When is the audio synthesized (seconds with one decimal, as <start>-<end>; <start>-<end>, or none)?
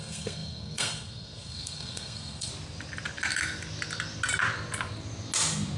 0.0-2.5